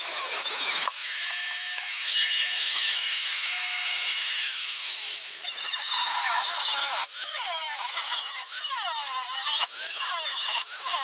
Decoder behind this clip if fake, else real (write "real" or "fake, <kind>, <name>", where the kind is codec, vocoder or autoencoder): fake, autoencoder, DAC-VAE